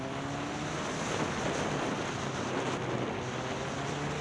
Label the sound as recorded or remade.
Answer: recorded